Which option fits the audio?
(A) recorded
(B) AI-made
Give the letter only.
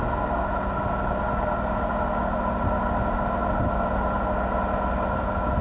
A